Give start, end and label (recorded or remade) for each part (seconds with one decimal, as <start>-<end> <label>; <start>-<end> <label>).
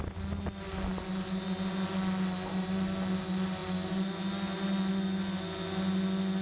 0.0-6.4 recorded